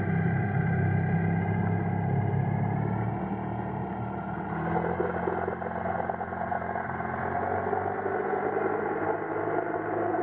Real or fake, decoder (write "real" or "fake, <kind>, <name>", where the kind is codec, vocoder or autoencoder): real